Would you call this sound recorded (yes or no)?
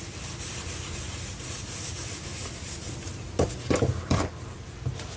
yes